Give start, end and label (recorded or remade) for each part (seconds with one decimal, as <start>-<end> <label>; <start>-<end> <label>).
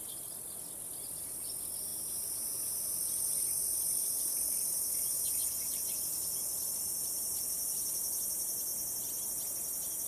0.0-10.1 recorded